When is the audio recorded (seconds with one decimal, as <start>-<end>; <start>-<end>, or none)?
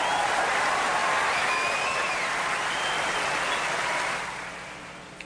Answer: 0.0-5.2